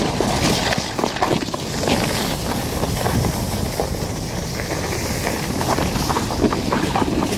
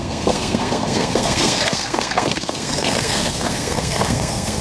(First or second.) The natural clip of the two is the first